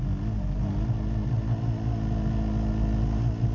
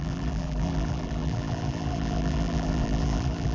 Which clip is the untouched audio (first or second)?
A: first